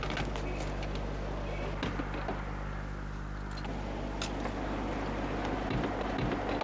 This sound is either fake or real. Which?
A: real